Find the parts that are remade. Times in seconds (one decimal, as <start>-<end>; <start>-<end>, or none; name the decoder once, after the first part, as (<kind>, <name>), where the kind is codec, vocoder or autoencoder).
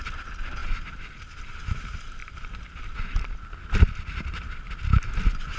2.2-2.8 (vocoder, BigVGAN v2)